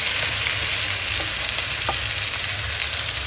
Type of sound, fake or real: real